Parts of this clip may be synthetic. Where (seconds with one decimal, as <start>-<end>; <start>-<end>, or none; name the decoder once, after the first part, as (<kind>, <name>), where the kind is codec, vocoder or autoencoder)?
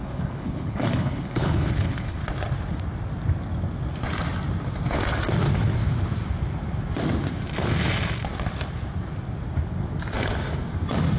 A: 0.0-2.2 (codec, HILCodec)